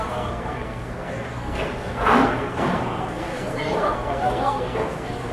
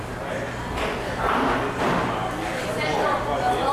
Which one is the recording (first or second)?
second